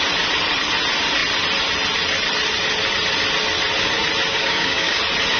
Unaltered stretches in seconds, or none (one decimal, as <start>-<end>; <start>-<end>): 0.0-4.3; 5.0-5.4